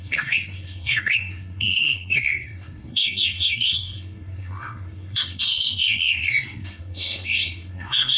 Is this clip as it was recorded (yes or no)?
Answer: no